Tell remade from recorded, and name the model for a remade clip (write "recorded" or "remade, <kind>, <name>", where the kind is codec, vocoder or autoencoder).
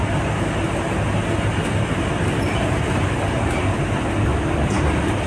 recorded